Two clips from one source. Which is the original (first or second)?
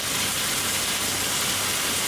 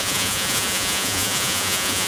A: first